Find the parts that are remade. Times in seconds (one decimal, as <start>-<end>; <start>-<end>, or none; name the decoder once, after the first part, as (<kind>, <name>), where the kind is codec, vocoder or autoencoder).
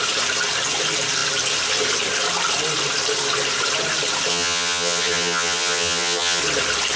4.3-6.4 (vocoder, HiFi-GAN)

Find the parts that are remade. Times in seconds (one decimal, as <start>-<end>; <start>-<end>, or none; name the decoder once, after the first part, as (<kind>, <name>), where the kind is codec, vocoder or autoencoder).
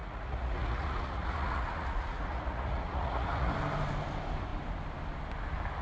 0.0-3.5 (vocoder, Vocos)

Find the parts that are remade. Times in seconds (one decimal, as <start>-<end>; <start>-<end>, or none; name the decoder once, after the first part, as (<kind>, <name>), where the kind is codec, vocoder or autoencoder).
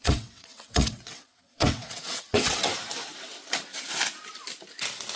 0.0-2.7 (vocoder, WaveNeXt)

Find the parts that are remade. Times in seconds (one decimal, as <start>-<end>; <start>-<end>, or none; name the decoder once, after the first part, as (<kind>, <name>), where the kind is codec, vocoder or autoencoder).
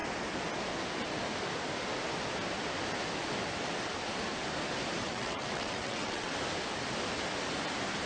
5.0-6.3 (vocoder, WaveNeXt)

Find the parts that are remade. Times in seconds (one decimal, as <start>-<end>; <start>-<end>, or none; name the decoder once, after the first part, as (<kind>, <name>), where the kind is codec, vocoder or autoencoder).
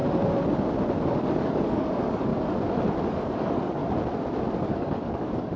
1.1-2.3 (codec, DAC); 3.1-3.8; 4.6-5.6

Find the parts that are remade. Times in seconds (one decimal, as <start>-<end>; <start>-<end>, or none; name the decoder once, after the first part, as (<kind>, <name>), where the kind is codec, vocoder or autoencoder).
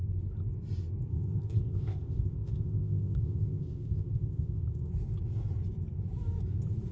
1.1-4.9 (codec, ZipCodec)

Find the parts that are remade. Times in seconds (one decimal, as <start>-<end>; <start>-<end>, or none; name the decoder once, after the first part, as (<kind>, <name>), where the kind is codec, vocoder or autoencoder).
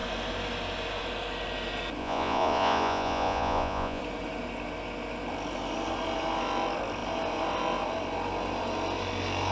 2.0-4.0 (vocoder, Vocos)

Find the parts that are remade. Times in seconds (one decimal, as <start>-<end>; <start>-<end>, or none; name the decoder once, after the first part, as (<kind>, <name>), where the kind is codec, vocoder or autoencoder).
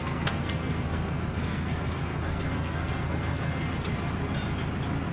0.0-3.7 (codec, SNAC)